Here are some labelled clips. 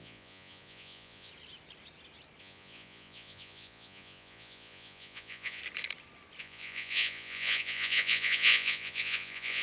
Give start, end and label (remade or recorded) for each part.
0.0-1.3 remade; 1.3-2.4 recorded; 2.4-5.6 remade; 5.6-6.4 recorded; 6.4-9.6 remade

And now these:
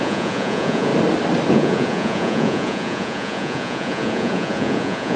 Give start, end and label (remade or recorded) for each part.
0.0-0.9 remade; 0.9-1.5 recorded; 1.5-5.2 remade

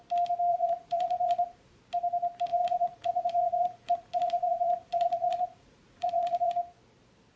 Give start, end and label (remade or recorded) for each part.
0.0-0.5 recorded; 0.5-1.8 remade; 1.8-2.5 recorded; 2.5-6.5 remade; 6.5-7.4 recorded

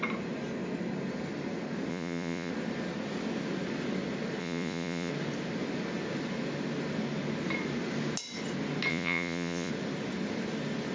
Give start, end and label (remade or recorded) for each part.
0.0-1.9 recorded; 1.9-2.5 remade; 2.5-4.4 recorded; 4.4-5.1 remade; 5.1-8.9 recorded; 8.9-9.7 remade; 9.7-10.9 recorded

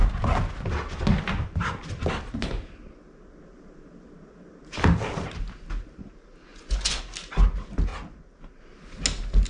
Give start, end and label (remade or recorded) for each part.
0.0-6.5 recorded; 6.5-7.0 remade; 7.0-9.5 recorded